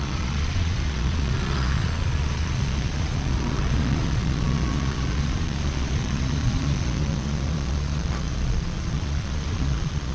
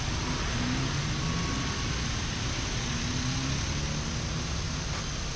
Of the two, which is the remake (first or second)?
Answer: first